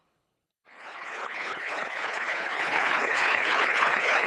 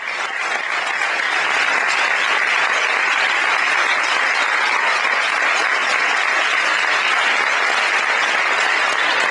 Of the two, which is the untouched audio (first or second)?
second